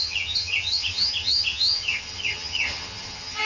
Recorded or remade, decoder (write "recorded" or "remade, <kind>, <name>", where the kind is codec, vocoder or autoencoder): remade, vocoder, HiFi-GAN